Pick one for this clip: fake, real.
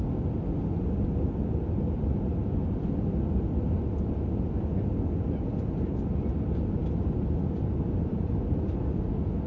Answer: real